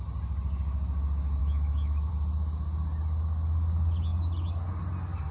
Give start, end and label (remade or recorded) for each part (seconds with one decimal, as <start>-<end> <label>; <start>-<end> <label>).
0.0-1.4 recorded; 1.4-2.1 remade; 2.1-5.3 recorded

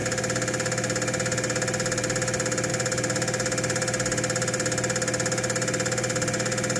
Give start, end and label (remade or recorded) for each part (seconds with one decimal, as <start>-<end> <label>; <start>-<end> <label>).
0.0-6.8 recorded

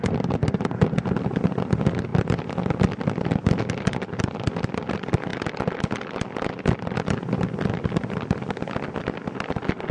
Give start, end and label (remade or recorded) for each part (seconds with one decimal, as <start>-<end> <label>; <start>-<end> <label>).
0.0-9.9 recorded